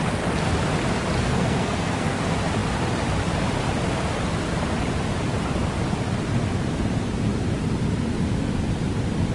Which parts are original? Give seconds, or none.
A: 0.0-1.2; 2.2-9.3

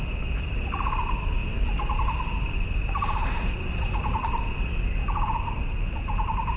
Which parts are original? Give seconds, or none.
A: 0.0-6.6

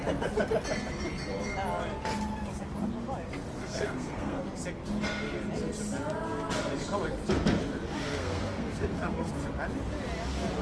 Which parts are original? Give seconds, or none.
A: 0.0-3.6; 4.4-8.1; 9.3-10.6